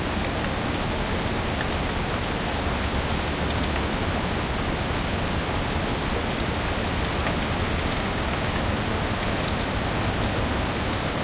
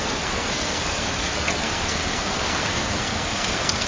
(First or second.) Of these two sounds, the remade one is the second